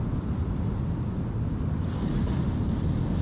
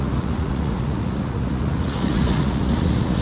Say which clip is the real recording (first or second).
first